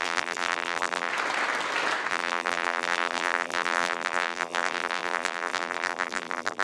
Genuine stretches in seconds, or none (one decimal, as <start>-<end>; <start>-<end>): 1.1-2.1